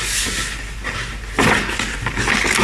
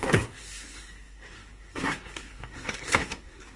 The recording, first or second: first